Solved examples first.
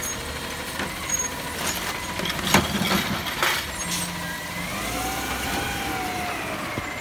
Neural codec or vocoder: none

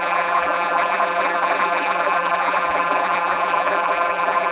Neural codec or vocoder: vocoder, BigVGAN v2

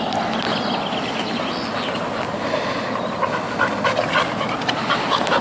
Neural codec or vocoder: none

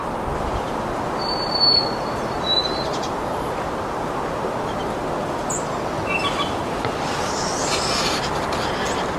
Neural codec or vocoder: none